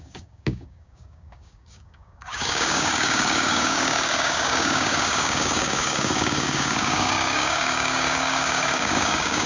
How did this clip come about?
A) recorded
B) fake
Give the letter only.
B